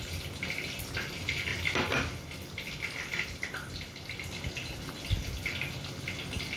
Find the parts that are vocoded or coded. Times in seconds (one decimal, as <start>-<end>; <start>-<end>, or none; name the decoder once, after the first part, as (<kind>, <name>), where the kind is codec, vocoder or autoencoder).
none